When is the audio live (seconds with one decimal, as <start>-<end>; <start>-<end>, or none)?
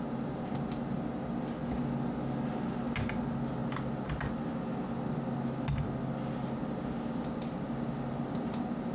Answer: 0.0-8.9